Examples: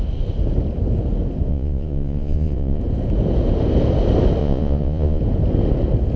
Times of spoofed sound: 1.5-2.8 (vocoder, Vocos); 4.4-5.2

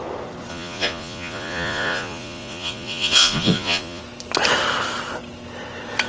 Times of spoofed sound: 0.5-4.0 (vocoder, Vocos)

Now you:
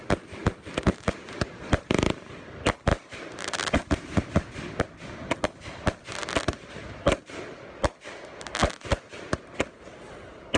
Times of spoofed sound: 0.4-2.3 (vocoder, BigVGAN v2)

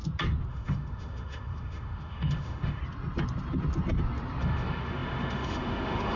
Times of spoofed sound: 0.5-2.8 (autoencoder, DAC-VAE); 4.4-6.2